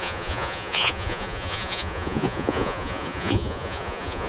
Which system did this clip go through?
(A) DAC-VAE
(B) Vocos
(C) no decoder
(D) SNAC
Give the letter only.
B